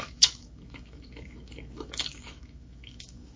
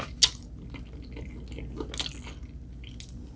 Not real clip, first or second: first